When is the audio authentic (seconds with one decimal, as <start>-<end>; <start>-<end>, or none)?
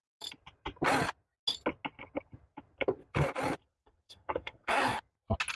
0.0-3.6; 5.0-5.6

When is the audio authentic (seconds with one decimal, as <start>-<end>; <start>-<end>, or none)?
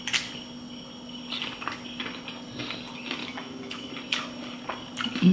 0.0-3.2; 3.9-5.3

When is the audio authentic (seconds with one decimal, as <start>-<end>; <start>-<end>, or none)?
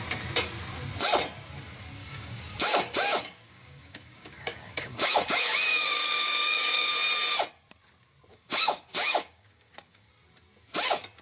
0.0-2.0; 6.9-8.3; 10.1-11.2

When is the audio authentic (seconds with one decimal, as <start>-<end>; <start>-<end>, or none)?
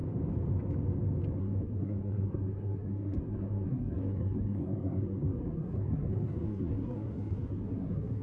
0.0-1.4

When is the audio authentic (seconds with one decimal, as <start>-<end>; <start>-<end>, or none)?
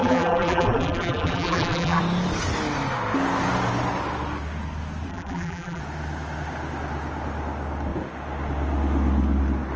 2.0-5.1; 5.8-9.8